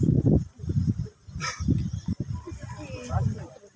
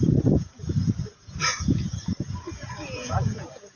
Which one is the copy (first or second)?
second